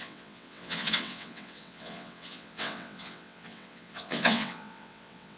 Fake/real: fake